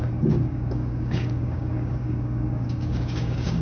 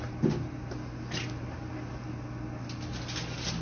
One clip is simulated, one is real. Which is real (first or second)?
second